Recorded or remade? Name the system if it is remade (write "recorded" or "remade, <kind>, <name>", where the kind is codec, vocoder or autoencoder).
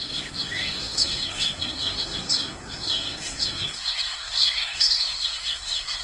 remade, codec, SNAC